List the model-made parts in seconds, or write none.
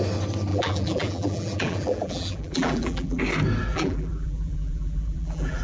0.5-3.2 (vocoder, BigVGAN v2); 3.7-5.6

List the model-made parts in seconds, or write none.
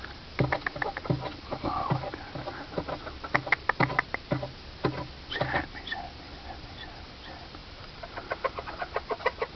7.6-8.7 (vocoder, BigVGAN v2)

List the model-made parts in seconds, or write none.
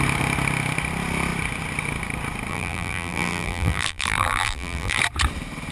2.5-5.0 (vocoder, BigVGAN v2)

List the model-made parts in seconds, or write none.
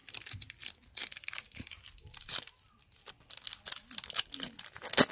0.0-3.1 (vocoder, BigVGAN v2)